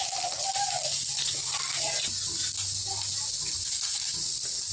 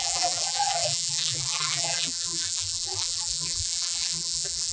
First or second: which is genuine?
first